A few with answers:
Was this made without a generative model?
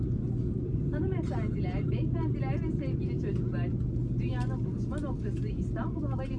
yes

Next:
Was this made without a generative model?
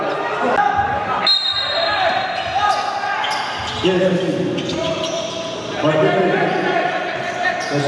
yes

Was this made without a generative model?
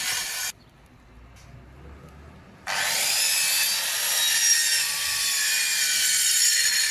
yes